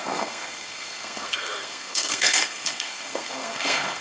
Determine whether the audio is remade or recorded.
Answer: remade